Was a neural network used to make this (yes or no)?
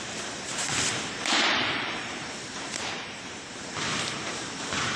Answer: yes